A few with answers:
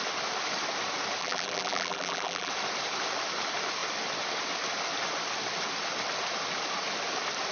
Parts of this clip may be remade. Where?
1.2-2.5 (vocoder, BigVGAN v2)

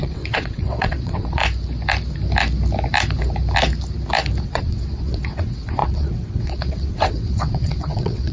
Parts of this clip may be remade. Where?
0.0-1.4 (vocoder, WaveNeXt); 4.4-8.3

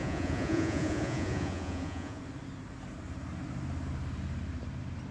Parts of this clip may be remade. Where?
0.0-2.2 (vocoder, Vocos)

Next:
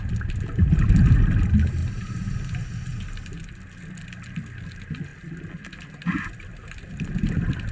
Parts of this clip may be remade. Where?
1.8-2.3 (vocoder, BigVGAN v2)

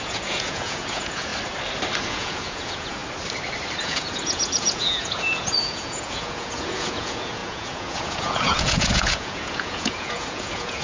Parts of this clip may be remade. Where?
0.0-1.3 (vocoder, Vocos); 2.0-3.0; 3.8-10.8

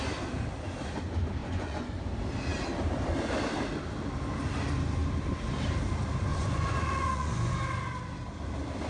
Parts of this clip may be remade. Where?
1.4-1.9 (vocoder, Vocos); 6.3-7.5